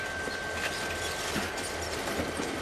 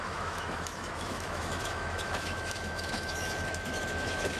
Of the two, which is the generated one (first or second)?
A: second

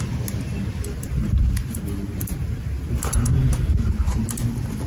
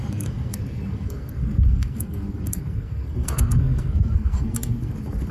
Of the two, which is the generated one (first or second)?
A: second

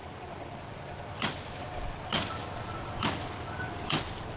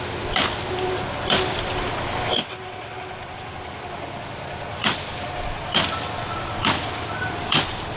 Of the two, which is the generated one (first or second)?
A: first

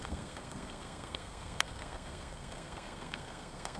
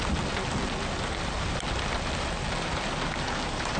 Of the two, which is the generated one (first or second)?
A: first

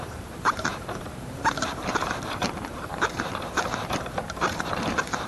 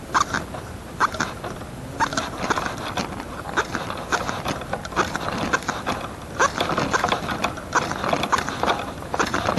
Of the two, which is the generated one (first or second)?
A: first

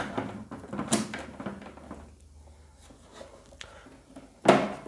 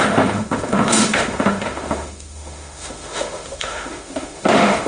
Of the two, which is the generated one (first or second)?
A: second